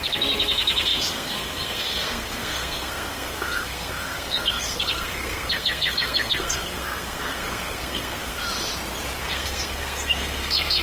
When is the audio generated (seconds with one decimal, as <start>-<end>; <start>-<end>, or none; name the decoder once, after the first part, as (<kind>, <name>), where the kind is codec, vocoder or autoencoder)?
0.0-8.4 (codec, SNAC); 9.2-10.8

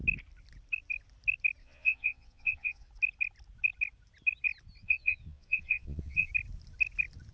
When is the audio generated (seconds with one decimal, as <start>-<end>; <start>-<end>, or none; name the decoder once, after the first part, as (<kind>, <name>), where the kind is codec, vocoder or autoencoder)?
1.6-2.9 (vocoder, Vocos); 4.8-6.3

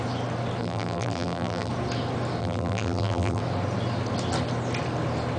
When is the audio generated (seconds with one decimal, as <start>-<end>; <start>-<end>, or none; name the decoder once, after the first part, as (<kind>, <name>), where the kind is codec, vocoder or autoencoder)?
0.6-1.7 (vocoder, BigVGAN v2); 2.4-3.4